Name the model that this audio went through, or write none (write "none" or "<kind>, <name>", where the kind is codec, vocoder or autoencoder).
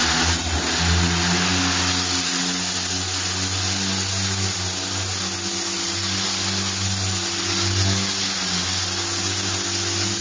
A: none